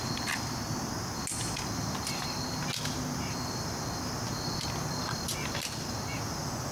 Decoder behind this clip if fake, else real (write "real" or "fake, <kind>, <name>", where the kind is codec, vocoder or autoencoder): real